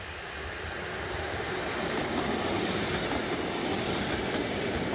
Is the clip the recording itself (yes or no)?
yes